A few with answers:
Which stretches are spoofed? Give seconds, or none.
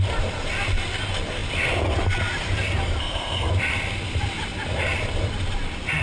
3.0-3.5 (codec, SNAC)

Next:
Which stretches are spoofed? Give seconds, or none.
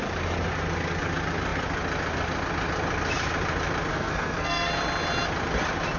3.9-4.7 (codec, SNAC)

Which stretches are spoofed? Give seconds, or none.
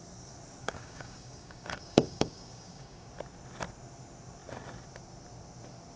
0.6-3.1 (codec, DAC)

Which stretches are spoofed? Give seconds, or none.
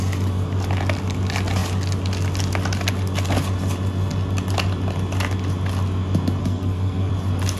6.4-7.1 (codec, SNAC)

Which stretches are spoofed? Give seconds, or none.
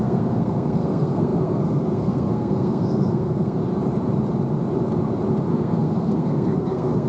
0.0-3.6 (codec, SNAC); 5.5-7.1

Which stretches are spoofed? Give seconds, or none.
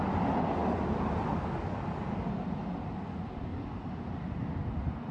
0.6-2.3 (vocoder, BigVGAN v2); 3.5-4.5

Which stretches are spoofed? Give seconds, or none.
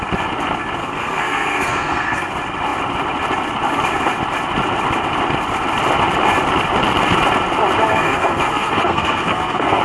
0.8-2.3 (codec, SNAC); 7.9-9.8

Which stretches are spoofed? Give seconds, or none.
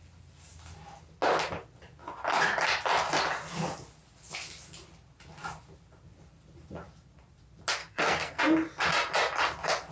7.8-8.4 (codec, SNAC)